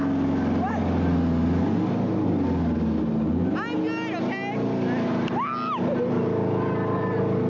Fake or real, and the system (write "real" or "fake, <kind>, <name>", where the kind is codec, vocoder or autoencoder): real